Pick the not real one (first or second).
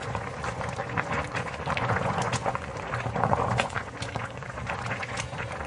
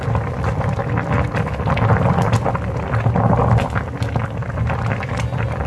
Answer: first